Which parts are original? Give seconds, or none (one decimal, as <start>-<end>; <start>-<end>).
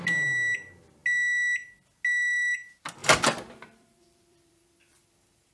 0.0-3.0